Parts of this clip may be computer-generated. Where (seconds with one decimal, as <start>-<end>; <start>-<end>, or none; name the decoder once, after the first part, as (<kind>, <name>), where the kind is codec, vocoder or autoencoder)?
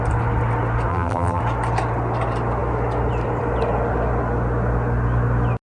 0.9-1.4 (vocoder, BigVGAN v2)